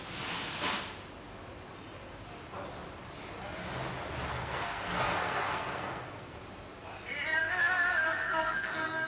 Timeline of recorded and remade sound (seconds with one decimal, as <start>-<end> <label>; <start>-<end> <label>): 0.0-4.3 recorded; 4.3-6.4 remade; 6.4-7.4 recorded; 7.4-9.1 remade